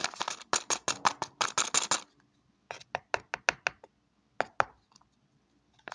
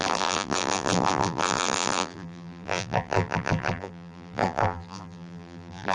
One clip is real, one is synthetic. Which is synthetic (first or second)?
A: second